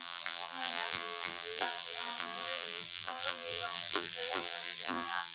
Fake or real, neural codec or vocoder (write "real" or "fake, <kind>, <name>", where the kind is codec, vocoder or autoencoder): fake, vocoder, BigVGAN v2